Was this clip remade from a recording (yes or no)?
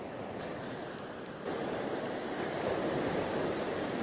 no